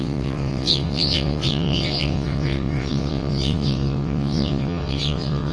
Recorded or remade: remade